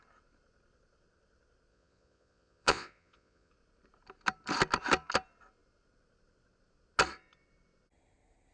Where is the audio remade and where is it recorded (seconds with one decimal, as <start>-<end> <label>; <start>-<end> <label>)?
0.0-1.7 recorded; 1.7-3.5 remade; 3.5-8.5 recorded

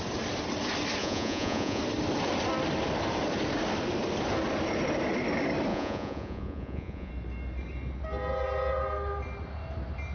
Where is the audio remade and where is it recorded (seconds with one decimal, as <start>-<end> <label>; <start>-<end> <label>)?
0.0-1.0 recorded; 1.0-1.8 remade; 1.8-5.7 recorded; 5.7-7.1 remade; 7.1-10.1 recorded

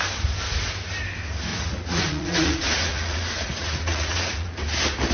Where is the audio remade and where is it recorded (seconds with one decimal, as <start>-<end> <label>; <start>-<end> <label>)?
0.0-1.5 recorded; 1.5-4.6 remade; 4.6-5.1 recorded

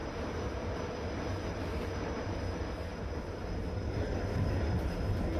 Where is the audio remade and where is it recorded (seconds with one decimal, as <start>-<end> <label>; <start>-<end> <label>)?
0.0-5.4 recorded

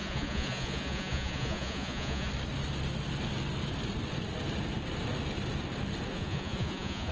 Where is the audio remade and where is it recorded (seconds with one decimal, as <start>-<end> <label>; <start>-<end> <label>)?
0.0-2.3 remade; 2.3-6.1 recorded; 6.1-7.1 remade